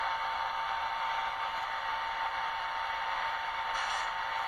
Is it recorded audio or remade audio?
recorded